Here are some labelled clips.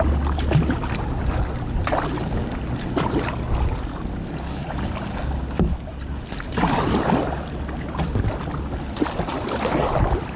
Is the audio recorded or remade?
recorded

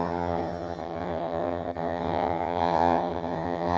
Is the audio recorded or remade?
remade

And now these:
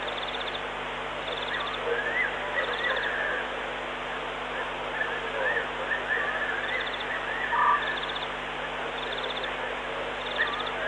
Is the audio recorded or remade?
recorded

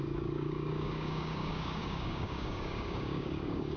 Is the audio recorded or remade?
remade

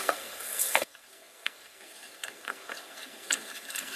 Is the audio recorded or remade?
remade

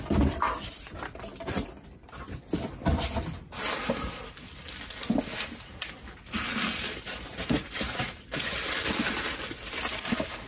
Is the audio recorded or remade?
remade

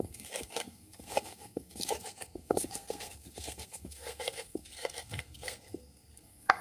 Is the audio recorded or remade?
remade